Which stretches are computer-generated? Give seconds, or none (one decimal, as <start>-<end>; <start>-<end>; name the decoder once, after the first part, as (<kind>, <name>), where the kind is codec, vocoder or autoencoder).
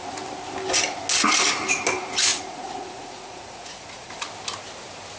2.3-4.1 (vocoder, Vocos)